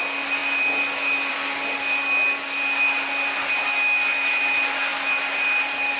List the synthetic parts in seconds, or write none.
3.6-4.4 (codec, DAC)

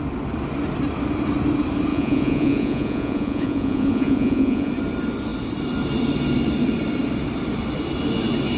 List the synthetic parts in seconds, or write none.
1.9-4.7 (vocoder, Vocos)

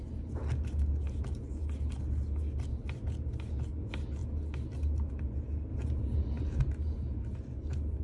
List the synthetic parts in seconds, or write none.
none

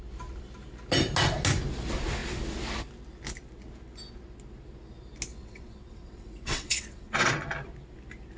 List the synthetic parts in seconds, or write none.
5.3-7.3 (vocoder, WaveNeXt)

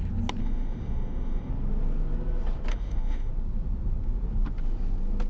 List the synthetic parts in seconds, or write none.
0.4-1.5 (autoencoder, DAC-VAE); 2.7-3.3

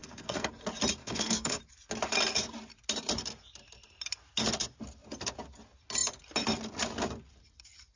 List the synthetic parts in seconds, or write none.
0.0-0.5 (codec, SNAC); 1.0-1.6

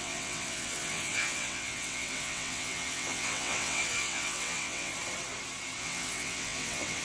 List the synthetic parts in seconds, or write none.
0.0-4.9 (vocoder, WaveNeXt); 5.8-7.0

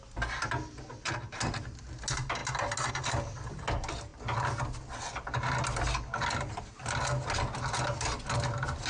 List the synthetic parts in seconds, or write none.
none